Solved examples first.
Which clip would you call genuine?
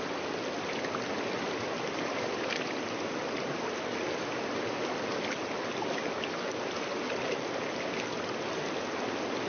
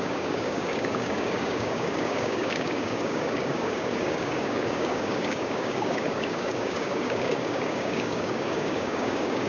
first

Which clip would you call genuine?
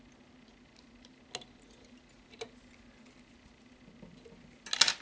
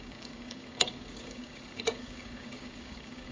first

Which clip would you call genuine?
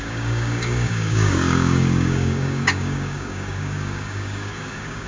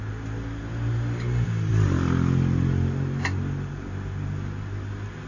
second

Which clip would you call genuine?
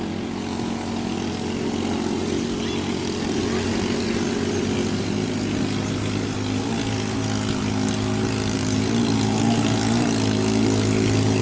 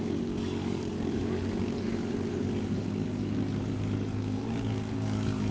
first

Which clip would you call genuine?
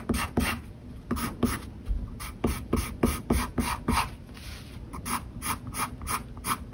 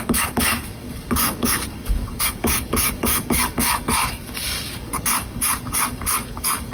first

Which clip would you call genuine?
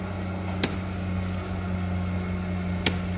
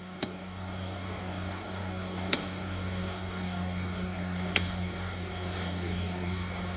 first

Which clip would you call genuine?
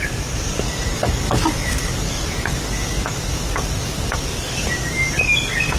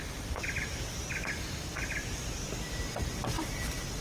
second